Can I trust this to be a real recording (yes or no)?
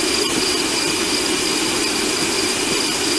yes